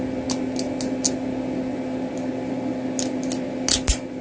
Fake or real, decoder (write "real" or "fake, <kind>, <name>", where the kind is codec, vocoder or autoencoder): real